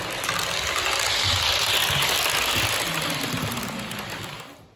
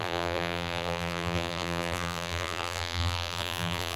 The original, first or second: first